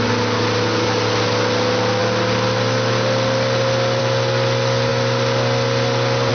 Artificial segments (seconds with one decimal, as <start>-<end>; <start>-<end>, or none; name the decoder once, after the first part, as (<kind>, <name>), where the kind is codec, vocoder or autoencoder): none